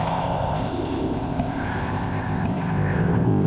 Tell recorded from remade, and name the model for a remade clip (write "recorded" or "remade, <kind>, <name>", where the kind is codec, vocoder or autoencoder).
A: remade, codec, ZipCodec